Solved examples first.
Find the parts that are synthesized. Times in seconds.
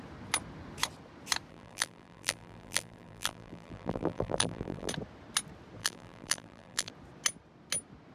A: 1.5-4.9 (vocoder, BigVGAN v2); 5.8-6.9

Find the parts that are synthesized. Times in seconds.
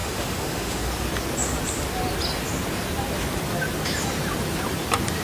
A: 0.0-0.9 (autoencoder, DAC-VAE)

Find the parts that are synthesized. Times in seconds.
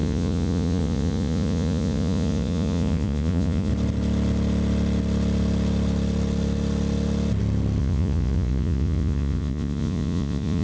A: 0.0-3.7 (vocoder, Vocos); 7.8-10.6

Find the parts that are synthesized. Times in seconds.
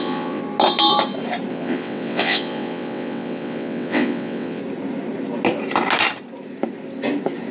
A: 0.0-0.4 (vocoder, WaveNeXt); 1.5-4.6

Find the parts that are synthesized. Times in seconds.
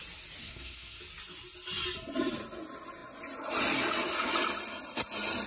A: 0.4-1.0 (codec, SNAC)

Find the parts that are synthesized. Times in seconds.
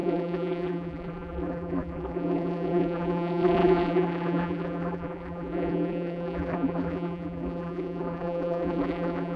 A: 0.0-9.4 (vocoder, BigVGAN v2)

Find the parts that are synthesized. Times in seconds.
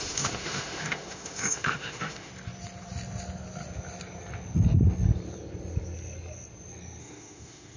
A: 0.0-2.3 (autoencoder, DAC-VAE); 7.0-7.8